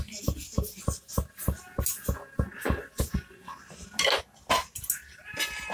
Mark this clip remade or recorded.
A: recorded